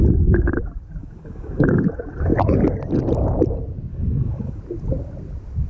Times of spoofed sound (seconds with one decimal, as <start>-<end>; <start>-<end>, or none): 1.0-1.8; 3.9-4.6